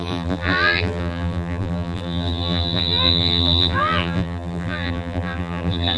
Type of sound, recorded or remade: remade